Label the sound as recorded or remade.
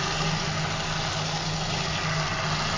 recorded